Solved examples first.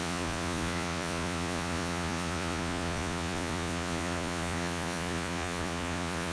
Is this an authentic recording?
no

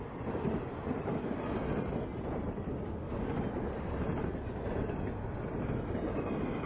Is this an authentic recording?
yes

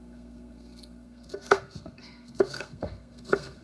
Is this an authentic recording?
no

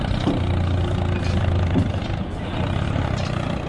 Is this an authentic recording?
yes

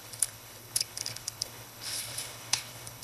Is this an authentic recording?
no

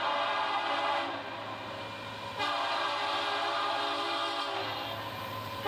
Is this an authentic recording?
yes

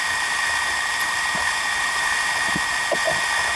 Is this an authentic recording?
no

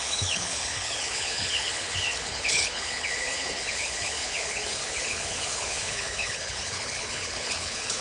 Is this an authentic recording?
no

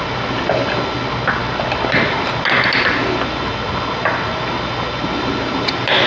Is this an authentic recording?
yes